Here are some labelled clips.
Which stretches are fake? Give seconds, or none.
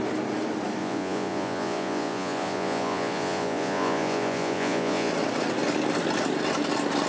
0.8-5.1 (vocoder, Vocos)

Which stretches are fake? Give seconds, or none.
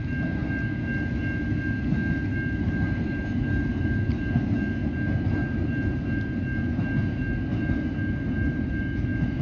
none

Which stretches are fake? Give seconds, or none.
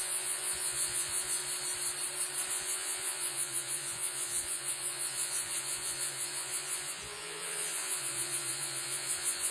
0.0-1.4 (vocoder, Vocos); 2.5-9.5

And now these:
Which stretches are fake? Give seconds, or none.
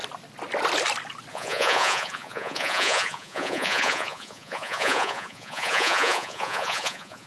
1.3-7.3 (vocoder, Vocos)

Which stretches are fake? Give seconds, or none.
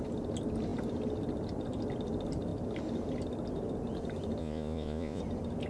4.4-5.2 (vocoder, Vocos)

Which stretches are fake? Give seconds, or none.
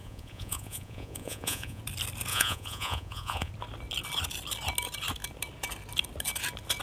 0.0-1.8 (vocoder, Vocos); 2.3-3.5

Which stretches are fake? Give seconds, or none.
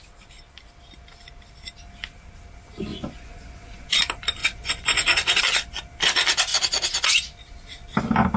2.9-4.0 (vocoder, Vocos); 4.4-5.4